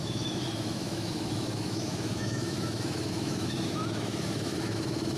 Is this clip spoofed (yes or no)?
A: yes